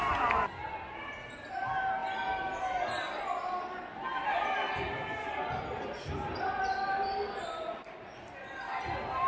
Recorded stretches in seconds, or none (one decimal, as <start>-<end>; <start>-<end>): 0.0-9.3

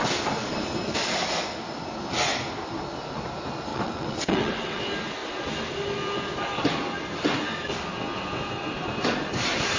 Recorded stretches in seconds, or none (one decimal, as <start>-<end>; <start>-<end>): 0.0-3.7; 4.8-9.8